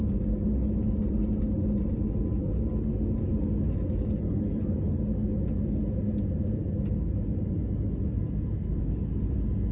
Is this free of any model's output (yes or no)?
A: yes